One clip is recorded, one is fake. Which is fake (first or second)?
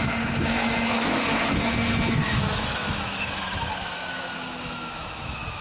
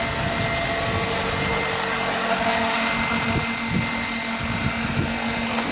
first